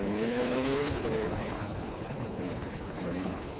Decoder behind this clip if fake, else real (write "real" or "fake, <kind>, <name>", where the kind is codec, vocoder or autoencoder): fake, codec, HILCodec